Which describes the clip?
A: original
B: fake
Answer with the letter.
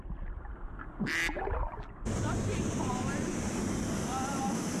A